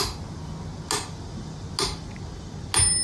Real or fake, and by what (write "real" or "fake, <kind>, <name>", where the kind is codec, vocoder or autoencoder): real